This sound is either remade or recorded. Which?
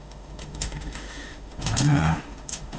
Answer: remade